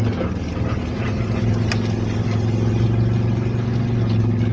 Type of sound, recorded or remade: recorded